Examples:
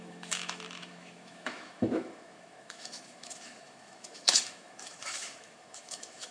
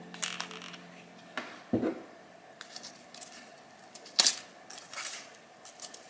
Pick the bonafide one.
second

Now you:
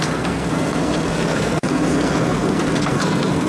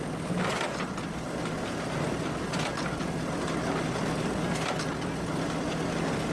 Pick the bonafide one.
second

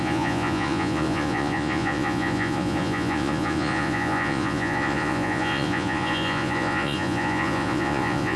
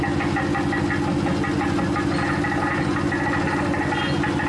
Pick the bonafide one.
second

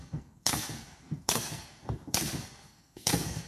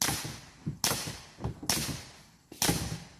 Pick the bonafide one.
second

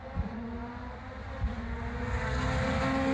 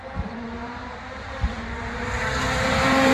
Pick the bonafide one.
first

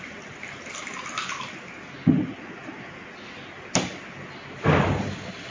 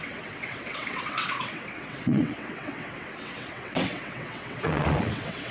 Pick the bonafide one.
first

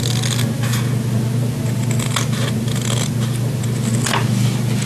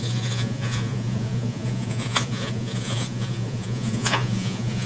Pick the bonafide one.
first